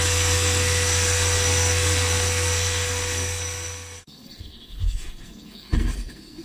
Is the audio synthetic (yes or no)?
yes